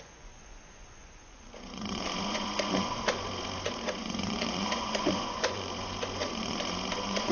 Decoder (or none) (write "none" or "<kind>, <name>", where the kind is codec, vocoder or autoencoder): vocoder, Vocos